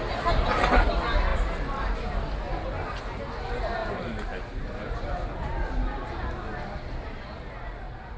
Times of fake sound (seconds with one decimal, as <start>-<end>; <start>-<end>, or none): none